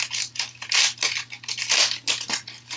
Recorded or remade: recorded